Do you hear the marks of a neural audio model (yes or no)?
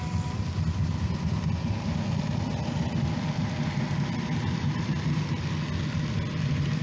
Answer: no